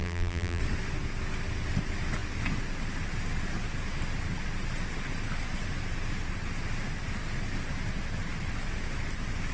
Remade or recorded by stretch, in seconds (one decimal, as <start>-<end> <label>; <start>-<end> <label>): 0.0-0.6 remade; 0.6-9.5 recorded